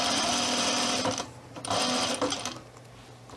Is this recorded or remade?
remade